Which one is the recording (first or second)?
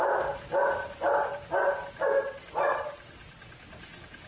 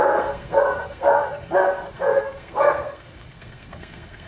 first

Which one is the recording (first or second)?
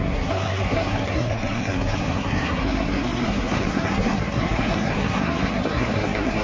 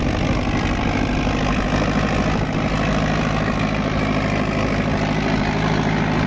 second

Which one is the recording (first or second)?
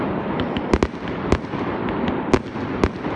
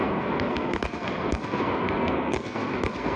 first